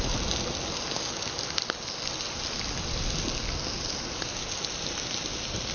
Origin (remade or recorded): recorded